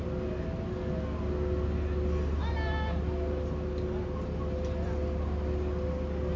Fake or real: real